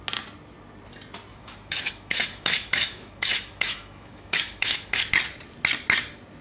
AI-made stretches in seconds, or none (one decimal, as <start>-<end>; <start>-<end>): 1.3-5.1